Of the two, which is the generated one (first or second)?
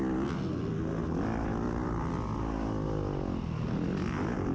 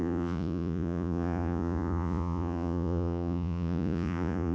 second